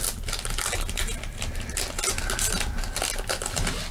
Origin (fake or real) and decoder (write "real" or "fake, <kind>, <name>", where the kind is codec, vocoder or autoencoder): real